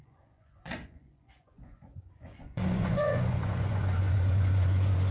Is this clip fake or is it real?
fake